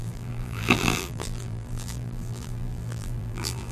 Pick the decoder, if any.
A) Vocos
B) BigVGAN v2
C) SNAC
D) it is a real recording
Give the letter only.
B